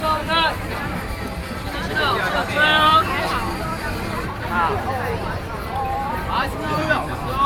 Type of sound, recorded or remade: remade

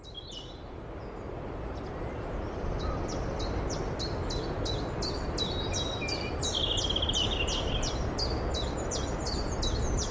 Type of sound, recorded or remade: recorded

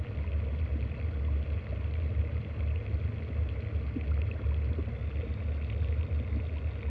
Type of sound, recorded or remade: recorded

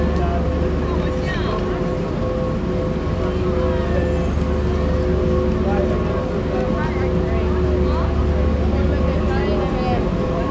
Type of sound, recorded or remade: recorded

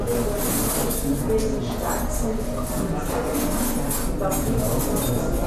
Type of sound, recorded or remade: recorded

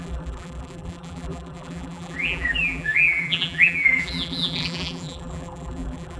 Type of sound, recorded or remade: remade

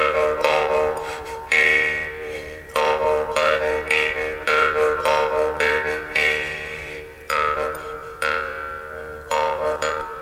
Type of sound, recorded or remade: remade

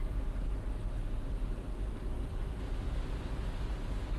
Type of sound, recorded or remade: recorded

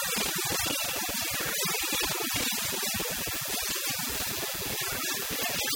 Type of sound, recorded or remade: recorded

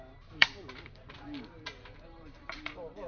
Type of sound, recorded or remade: remade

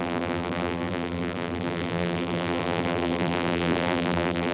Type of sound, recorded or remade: remade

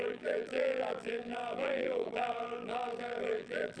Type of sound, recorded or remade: remade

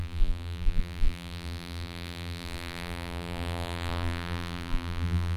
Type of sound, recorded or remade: remade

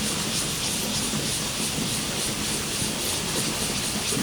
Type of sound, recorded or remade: remade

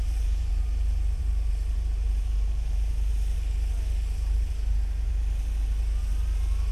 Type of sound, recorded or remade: remade